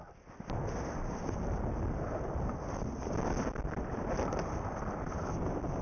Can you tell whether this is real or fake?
real